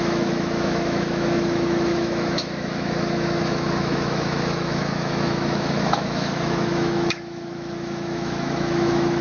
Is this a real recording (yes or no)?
no